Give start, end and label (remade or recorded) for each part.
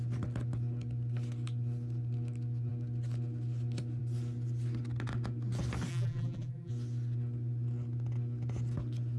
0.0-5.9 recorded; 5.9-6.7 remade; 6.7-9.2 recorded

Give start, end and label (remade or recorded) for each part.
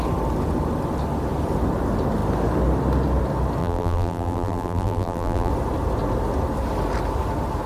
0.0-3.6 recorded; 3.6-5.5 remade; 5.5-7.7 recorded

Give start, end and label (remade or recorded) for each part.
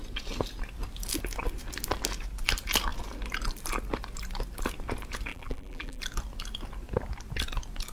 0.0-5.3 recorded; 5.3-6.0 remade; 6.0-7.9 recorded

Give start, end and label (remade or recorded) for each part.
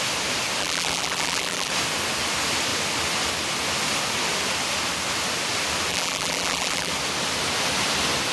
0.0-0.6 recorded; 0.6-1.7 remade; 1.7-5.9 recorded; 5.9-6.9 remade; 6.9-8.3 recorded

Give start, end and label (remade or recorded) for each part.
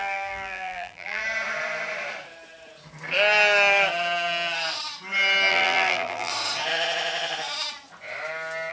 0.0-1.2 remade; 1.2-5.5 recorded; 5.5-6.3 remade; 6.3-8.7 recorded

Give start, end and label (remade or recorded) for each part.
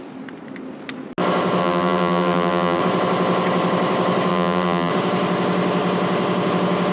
0.0-1.6 recorded; 1.6-2.8 remade; 2.8-4.3 recorded; 4.3-4.9 remade; 4.9-6.9 recorded